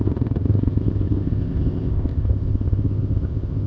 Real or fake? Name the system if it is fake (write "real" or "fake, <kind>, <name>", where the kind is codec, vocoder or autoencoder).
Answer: fake, codec, ZipCodec